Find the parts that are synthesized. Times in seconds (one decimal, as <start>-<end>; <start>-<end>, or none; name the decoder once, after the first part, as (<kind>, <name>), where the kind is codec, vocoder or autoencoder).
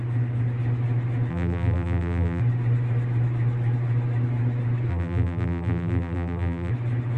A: 1.3-2.4 (vocoder, BigVGAN v2); 4.9-6.7